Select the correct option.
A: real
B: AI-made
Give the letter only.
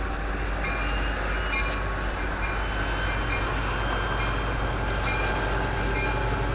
A